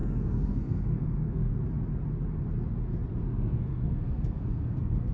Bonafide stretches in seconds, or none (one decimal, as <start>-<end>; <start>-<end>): 1.5-3.2